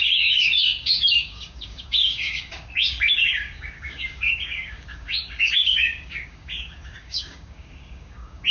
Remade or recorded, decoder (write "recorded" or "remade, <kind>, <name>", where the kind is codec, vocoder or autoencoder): remade, codec, DAC